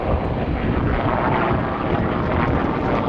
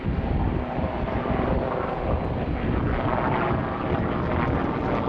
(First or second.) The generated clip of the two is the first